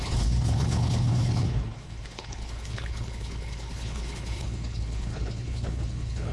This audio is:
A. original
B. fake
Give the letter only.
B